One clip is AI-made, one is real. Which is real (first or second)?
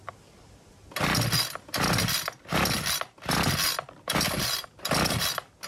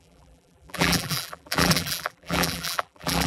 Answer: first